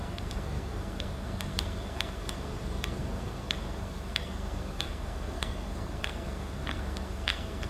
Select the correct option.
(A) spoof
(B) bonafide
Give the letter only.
A